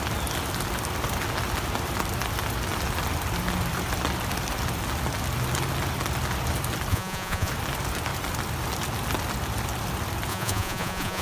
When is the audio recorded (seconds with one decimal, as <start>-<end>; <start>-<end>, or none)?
0.0-6.9; 7.5-10.3